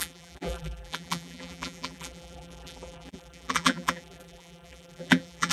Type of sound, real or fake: fake